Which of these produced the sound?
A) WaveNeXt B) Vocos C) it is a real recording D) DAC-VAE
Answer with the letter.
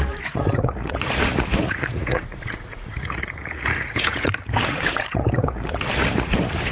B